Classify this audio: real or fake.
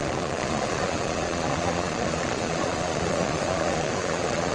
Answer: fake